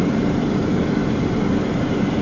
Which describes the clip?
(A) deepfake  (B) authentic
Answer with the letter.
A